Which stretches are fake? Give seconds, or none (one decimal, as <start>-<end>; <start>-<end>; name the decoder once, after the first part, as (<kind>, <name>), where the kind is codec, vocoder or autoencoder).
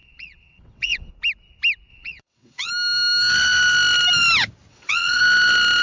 0.0-1.1 (vocoder, WaveNeXt); 1.9-2.7; 4.7-5.2